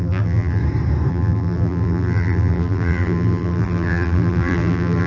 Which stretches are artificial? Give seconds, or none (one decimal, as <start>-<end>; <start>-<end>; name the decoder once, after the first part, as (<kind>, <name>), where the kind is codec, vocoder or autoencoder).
0.0-0.6 (vocoder, BigVGAN v2); 1.1-5.1